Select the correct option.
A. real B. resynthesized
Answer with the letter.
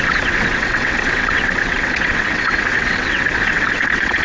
B